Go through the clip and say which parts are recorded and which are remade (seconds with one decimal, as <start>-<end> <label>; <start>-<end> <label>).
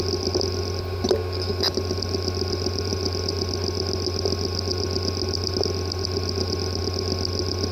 0.0-7.7 recorded